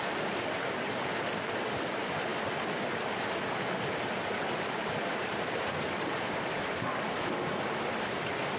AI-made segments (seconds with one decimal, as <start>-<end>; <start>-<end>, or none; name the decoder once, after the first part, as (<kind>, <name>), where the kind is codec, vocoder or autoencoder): none